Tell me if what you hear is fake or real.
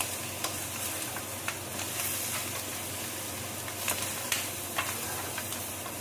real